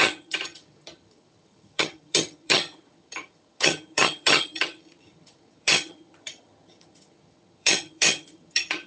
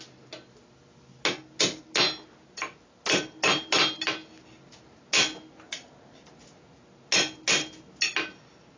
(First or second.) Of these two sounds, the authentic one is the second